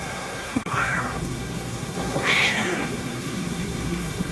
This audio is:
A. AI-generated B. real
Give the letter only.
A